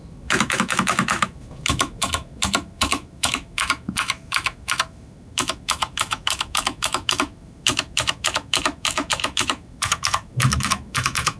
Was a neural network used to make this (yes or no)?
yes